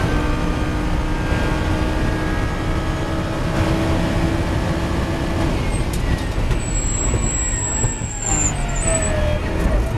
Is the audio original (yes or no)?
yes